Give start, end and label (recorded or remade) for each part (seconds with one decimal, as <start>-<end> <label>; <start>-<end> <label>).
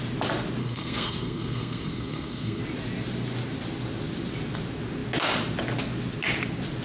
0.0-0.6 recorded; 0.6-2.6 remade; 2.6-6.8 recorded